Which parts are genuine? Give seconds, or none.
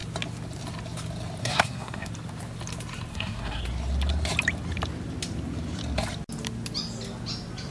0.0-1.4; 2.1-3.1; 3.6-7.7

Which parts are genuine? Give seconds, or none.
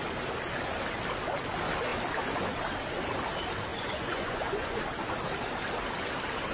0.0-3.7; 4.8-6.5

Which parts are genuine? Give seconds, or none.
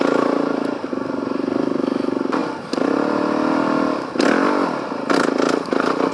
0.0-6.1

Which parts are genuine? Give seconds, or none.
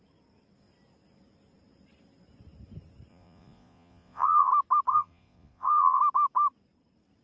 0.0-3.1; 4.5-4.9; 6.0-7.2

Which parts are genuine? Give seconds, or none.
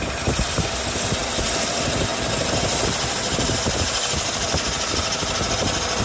2.1-6.0